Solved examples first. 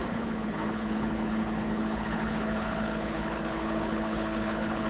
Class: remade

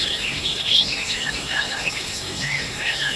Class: remade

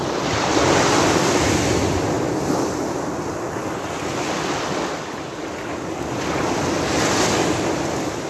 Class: recorded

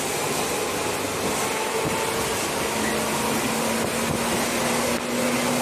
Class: recorded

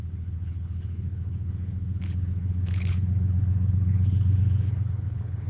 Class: remade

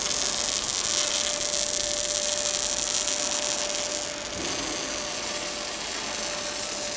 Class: recorded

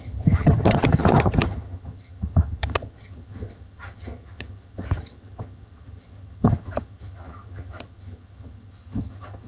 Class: remade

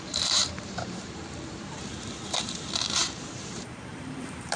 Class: remade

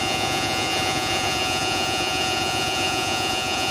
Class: remade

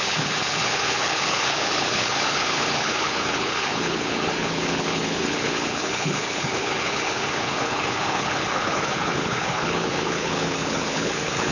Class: remade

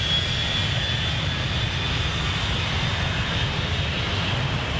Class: recorded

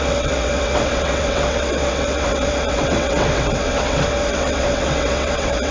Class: remade